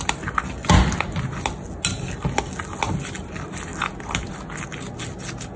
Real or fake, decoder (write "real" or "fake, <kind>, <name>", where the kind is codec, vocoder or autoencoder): real